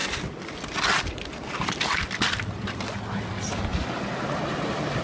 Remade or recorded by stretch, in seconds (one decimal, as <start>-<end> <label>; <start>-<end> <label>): 0.0-3.0 remade; 3.0-5.0 recorded